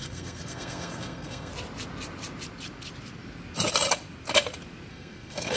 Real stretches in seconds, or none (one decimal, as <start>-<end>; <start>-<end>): 1.5-4.9